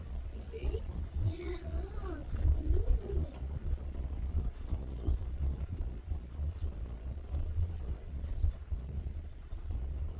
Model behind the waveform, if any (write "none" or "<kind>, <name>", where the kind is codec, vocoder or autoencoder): vocoder, Vocos